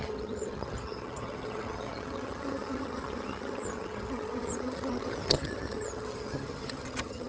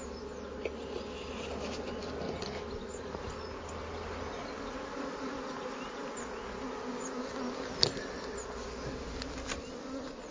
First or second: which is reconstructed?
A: first